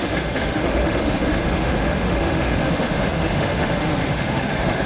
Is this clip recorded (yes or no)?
no